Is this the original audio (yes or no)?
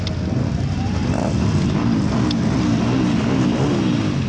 yes